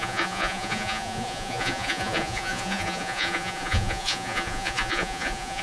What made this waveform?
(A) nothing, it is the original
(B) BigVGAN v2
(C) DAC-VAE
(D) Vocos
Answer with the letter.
D